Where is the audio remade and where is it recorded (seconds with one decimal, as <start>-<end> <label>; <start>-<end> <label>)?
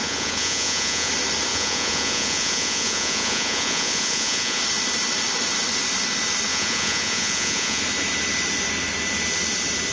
0.0-1.1 remade; 1.1-1.5 recorded; 1.5-4.6 remade; 4.6-6.5 recorded; 6.5-7.8 remade; 7.8-9.9 recorded